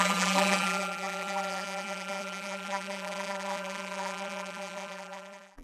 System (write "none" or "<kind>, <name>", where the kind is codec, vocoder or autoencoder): vocoder, BigVGAN v2